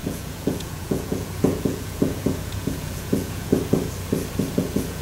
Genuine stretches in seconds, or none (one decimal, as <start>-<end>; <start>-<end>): 3.5-4.6